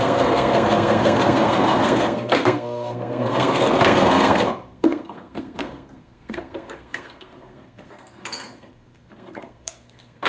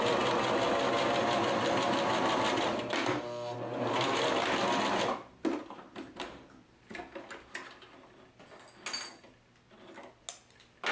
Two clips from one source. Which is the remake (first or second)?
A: first